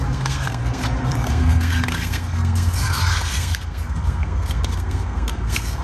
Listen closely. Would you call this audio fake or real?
fake